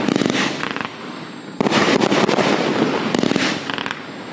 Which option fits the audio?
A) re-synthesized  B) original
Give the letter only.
B